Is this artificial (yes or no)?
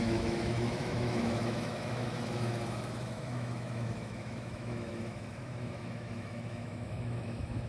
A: yes